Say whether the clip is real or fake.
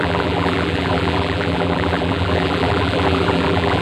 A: fake